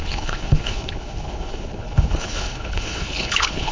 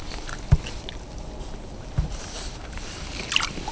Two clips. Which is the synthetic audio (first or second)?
first